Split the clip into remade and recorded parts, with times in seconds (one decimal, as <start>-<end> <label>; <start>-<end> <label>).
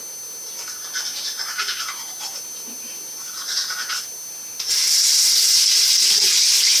0.0-6.8 recorded